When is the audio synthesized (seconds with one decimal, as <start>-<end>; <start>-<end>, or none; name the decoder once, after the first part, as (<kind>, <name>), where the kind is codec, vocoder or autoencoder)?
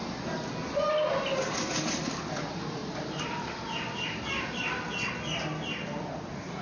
2.3-2.8 (vocoder, Vocos); 6.0-6.6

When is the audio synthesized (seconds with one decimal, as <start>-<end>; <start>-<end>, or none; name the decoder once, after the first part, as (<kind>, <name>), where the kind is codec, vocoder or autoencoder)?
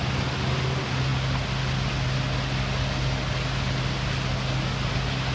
none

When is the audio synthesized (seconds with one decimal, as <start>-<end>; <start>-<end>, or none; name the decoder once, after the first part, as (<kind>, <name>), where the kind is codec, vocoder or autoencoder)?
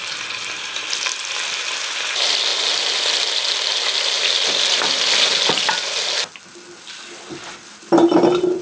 none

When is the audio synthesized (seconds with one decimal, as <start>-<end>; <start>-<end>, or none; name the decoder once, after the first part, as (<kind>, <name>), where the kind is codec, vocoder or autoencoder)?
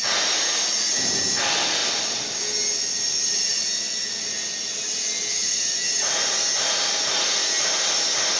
none